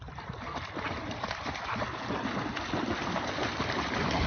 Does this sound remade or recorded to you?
recorded